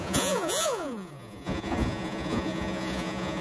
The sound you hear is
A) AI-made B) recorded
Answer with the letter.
A